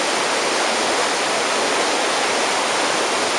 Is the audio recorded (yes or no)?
yes